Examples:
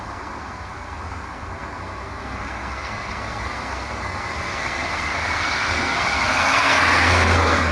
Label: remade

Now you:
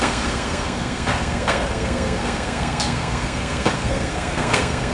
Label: remade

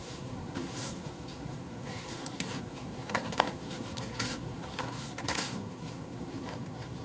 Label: remade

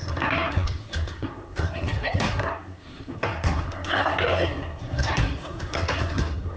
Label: remade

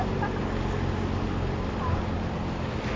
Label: recorded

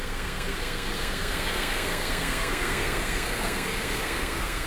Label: remade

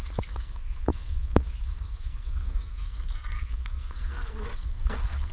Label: remade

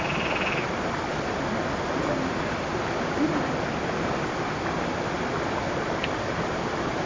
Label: recorded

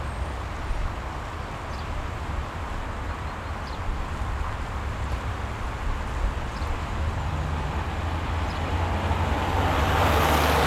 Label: recorded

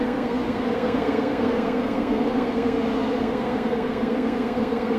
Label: remade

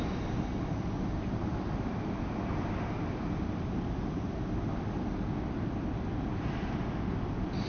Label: recorded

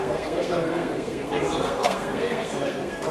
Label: remade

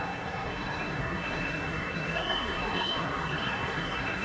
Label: remade